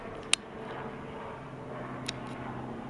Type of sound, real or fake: real